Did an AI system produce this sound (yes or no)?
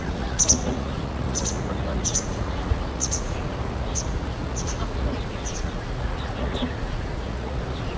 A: yes